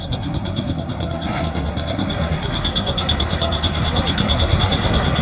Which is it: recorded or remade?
remade